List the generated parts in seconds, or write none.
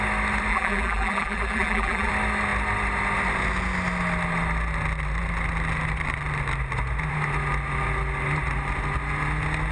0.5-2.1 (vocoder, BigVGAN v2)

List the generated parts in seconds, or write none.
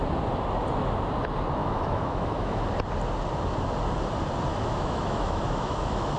1.6-2.6 (autoencoder, DAC-VAE); 4.5-6.2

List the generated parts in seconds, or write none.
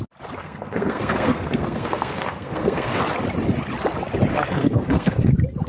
0.4-3.0 (codec, SNAC); 4.3-5.3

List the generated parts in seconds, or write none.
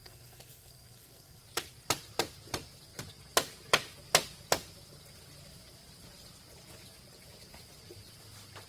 0.0-1.4 (codec, SNAC)